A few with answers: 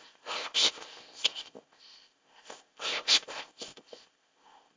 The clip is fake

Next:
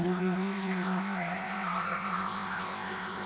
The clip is fake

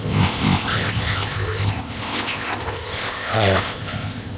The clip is fake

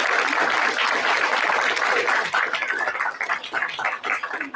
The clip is real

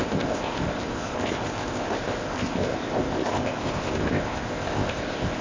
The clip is fake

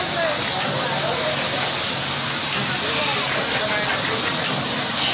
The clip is real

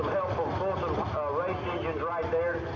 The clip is real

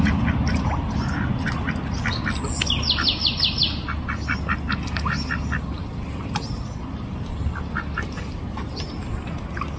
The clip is real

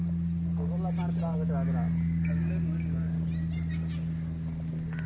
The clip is real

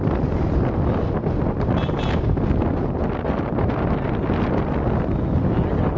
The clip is real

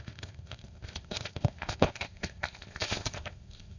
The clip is fake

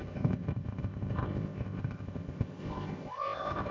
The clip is fake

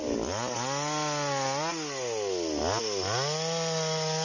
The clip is real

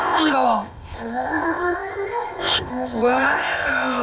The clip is fake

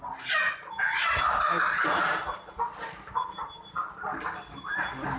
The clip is real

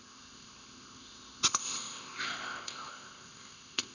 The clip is fake